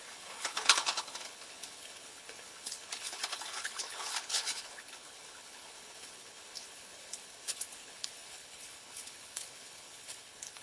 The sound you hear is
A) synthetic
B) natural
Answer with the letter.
A